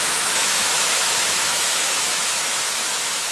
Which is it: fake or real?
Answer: fake